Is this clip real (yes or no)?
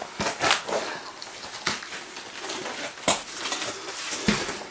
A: yes